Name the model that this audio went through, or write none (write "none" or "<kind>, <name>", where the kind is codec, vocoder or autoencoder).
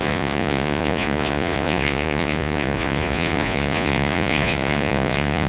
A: vocoder, Vocos